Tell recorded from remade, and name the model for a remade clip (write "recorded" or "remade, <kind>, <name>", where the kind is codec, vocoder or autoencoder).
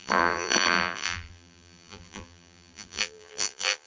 remade, vocoder, BigVGAN v2